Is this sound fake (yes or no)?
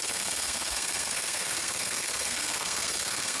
yes